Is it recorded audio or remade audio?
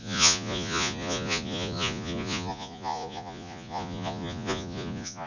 remade